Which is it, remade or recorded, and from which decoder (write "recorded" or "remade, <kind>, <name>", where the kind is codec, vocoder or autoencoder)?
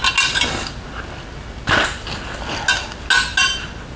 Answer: recorded